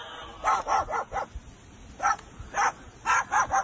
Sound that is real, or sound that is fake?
real